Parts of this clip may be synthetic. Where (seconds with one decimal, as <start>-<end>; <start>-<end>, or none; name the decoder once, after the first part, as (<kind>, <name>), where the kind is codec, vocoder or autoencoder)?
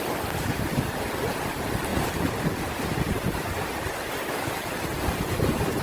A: 0.5-1.0 (vocoder, BigVGAN v2)